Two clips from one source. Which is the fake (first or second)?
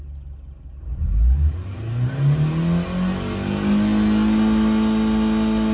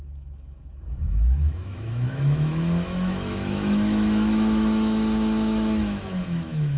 second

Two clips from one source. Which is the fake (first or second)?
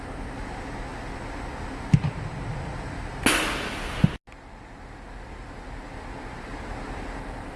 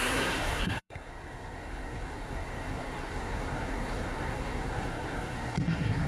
second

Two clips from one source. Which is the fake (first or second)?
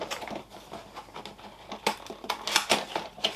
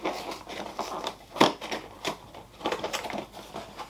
second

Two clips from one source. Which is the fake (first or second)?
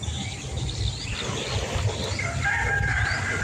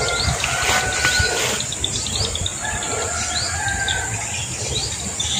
first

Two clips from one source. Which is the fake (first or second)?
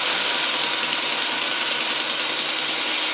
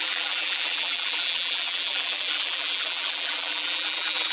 second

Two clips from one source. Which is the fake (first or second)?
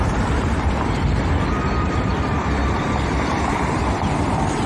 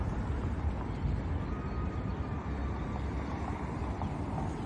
first